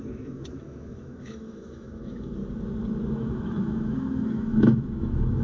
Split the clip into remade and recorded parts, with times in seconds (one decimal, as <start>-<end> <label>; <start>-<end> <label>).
0.0-2.4 remade; 2.4-3.1 recorded; 3.1-5.4 remade